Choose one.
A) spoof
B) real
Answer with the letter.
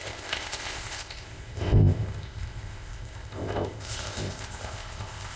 A